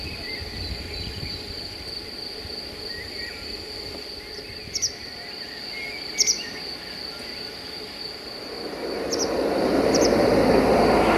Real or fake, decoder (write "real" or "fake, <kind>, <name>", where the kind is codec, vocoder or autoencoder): real